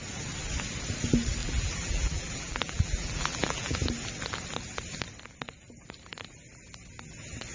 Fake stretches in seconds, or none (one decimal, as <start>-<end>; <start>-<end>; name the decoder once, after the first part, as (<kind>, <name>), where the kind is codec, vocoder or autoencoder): 1.4-3.7 (vocoder, BigVGAN v2)